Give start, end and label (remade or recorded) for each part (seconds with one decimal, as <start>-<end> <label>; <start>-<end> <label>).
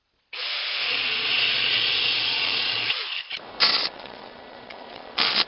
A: 0.0-3.0 remade; 3.0-3.7 recorded; 3.7-5.5 remade